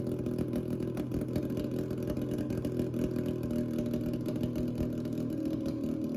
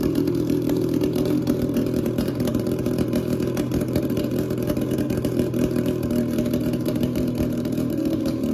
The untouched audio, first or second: first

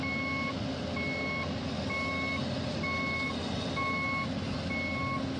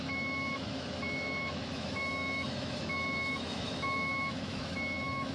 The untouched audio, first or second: first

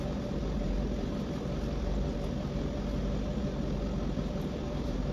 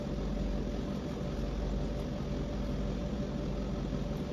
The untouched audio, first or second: second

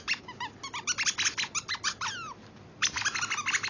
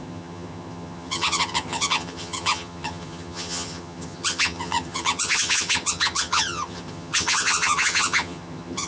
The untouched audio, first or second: first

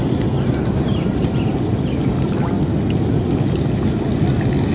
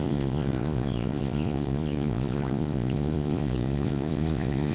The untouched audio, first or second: first